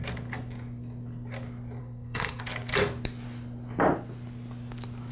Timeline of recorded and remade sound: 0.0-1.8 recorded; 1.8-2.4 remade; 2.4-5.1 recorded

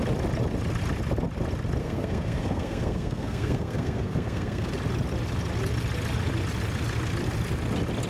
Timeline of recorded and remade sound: 0.0-1.8 recorded; 1.8-4.7 remade; 4.7-8.1 recorded

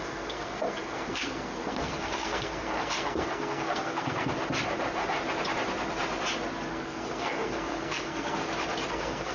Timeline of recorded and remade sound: 0.0-4.3 remade; 4.3-6.7 recorded; 6.7-8.4 remade; 8.4-8.9 recorded; 8.9-9.3 remade

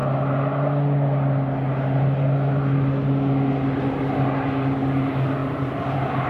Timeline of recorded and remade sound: 0.0-6.3 recorded

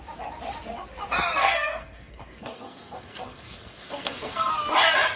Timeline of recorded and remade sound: 0.0-1.4 recorded; 1.4-4.5 remade; 4.5-5.2 recorded

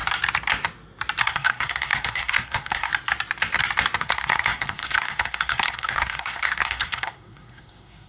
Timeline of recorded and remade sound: 0.0-1.2 recorded; 1.2-2.9 remade; 2.9-4.0 recorded; 4.0-8.1 remade